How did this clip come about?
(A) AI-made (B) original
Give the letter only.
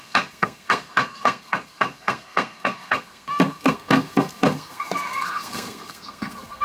A